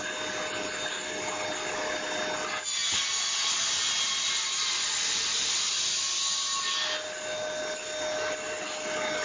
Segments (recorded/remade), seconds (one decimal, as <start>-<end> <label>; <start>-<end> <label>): 0.0-9.2 recorded